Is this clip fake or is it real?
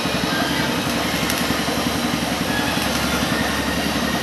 real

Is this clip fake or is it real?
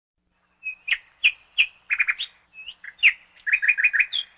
real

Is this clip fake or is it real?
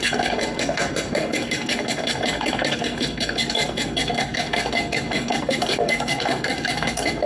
fake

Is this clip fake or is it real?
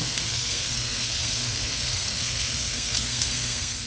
fake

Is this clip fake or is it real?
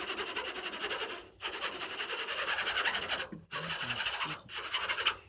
real